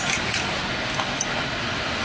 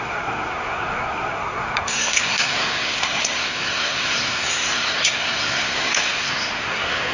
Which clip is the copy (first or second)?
second